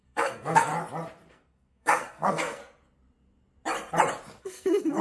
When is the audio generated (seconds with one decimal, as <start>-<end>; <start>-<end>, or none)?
0.0-0.7; 1.3-2.6; 4.4-5.0